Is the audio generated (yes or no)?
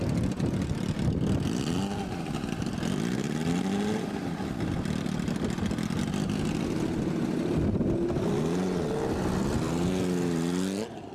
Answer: no